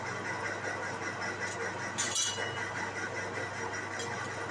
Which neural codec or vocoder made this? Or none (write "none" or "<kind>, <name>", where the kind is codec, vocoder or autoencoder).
none